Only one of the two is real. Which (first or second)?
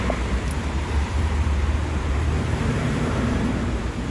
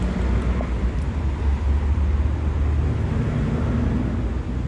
second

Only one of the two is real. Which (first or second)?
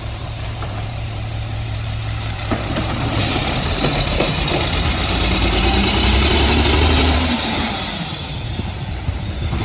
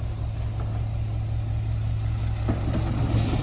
second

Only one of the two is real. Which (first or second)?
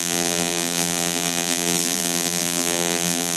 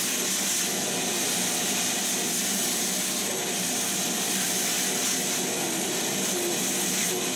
second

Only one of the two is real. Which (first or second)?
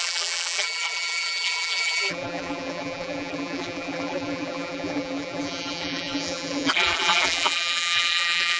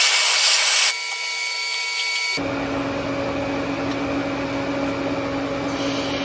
second